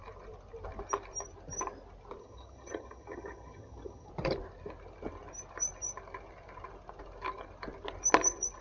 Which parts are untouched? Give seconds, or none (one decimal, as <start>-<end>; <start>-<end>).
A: 0.0-2.2; 4.1-8.6